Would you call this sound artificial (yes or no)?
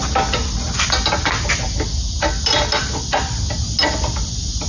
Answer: no